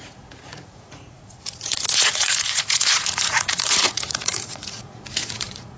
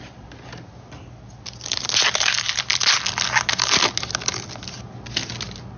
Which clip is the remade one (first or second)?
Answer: first